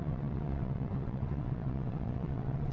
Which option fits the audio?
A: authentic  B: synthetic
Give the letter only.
B